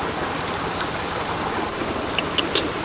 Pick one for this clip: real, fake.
real